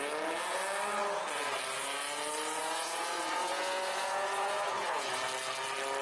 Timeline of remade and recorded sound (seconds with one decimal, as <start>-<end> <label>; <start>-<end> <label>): 0.0-2.6 recorded; 2.6-5.2 remade; 5.2-6.0 recorded